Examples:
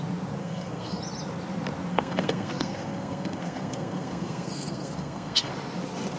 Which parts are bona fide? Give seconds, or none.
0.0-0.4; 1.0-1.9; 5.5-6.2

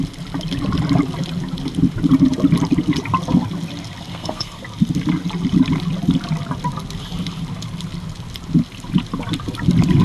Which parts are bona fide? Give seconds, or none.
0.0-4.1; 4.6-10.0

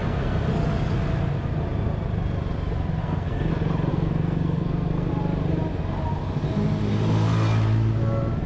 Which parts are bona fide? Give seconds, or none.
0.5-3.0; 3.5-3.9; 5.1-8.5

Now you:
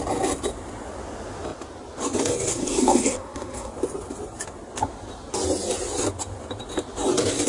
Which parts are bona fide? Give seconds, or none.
0.0-2.5; 3.7-7.5

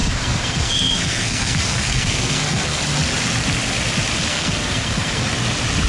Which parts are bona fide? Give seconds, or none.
2.8-4.3; 5.3-5.9

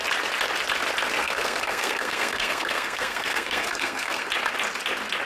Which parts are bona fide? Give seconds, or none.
0.0-1.2; 4.3-5.2

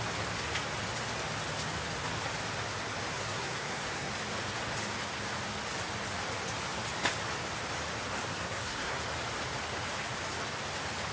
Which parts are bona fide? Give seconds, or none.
0.0-3.1; 4.1-8.3; 9.0-11.1

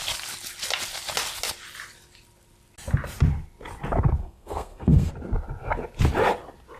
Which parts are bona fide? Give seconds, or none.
0.0-4.2; 5.1-6.8